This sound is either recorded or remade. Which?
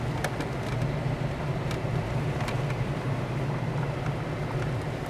recorded